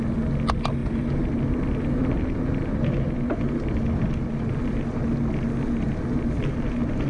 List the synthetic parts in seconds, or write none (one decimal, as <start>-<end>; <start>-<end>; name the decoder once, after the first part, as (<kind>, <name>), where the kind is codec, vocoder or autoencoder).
none